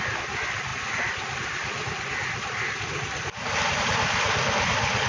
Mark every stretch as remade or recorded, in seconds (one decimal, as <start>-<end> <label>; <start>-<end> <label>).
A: 0.0-5.1 recorded